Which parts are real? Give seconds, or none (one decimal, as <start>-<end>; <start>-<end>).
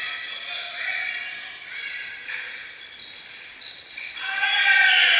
0.0-3.6; 4.4-5.2